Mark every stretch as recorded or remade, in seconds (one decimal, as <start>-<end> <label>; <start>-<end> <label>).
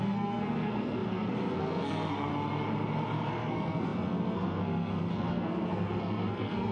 0.0-2.3 remade; 2.3-3.3 recorded; 3.3-6.7 remade